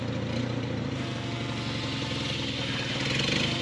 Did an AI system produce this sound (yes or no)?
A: no